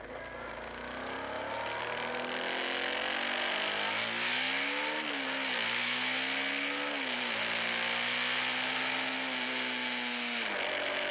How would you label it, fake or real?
real